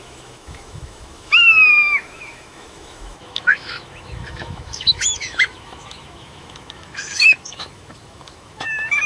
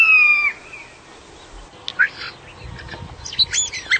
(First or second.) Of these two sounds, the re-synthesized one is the first